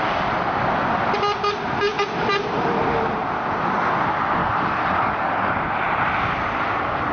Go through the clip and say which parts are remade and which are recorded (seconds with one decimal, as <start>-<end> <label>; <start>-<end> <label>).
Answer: 0.0-4.4 recorded; 4.4-5.6 remade; 5.6-7.1 recorded